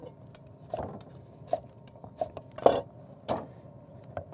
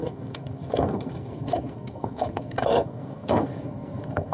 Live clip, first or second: first